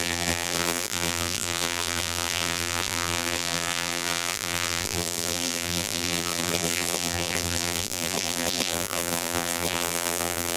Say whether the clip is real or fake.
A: fake